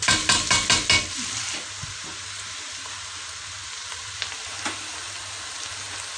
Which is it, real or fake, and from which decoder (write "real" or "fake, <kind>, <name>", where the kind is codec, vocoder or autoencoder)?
real